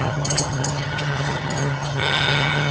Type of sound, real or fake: fake